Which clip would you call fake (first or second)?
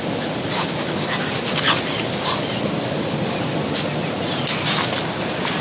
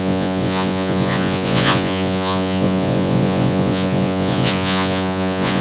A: second